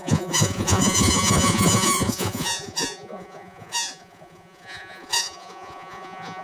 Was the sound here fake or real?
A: fake